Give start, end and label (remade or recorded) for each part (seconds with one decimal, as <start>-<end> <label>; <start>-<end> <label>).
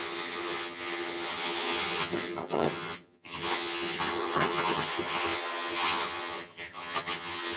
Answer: 0.0-7.6 remade